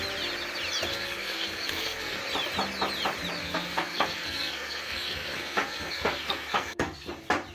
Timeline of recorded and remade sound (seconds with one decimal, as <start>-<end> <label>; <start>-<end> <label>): 0.0-0.9 recorded; 0.9-2.2 remade; 2.2-3.4 recorded; 3.4-7.1 remade; 7.1-7.5 recorded